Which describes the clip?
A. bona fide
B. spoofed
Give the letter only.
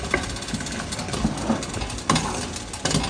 A